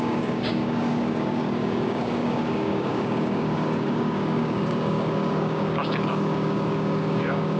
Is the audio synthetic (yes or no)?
yes